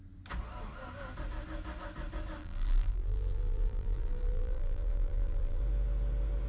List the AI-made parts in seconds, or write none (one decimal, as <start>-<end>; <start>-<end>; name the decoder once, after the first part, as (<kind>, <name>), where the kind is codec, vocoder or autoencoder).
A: 2.4-5.6 (vocoder, BigVGAN v2)

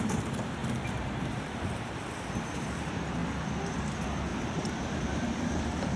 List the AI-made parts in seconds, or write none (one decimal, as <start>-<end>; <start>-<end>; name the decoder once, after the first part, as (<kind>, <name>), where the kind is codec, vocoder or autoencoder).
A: 0.0-3.2 (vocoder, BigVGAN v2); 3.9-6.0

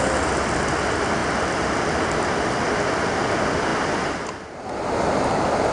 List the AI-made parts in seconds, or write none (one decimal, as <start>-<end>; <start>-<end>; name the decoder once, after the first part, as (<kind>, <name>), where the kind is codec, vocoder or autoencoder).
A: 1.2-2.7 (vocoder, BigVGAN v2)